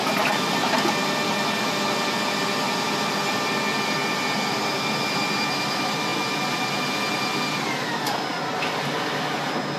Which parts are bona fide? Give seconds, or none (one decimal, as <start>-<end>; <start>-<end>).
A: 0.0-9.8